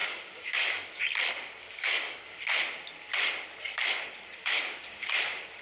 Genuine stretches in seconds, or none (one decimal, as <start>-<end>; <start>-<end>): 1.0-1.6; 2.4-4.4; 5.1-5.6